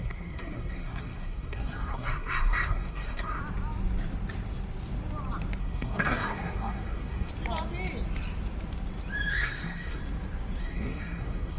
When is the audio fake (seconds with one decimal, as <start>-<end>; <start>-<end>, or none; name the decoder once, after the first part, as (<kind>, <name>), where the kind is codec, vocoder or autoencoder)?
0.0-3.4 (codec, SNAC); 5.6-7.3; 9.3-10.0; 10.6-11.6